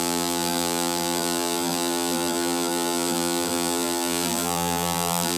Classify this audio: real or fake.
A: fake